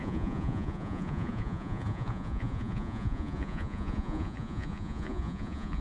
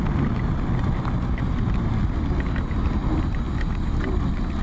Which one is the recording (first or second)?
second